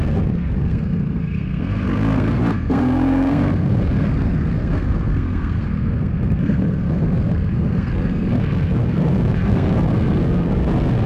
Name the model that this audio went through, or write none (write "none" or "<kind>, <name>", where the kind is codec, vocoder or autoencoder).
codec, SNAC